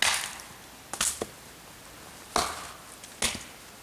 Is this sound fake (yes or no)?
no